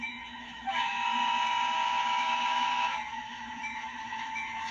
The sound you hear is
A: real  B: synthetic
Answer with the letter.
B